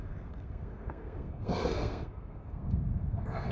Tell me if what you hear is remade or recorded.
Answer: remade